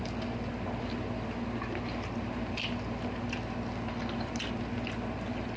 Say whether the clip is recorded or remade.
recorded